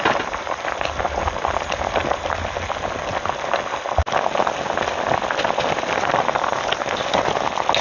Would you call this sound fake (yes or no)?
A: no